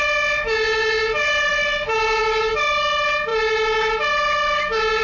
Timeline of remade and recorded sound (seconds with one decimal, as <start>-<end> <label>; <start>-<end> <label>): 0.0-5.0 recorded